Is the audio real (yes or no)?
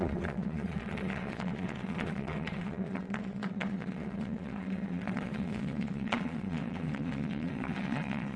no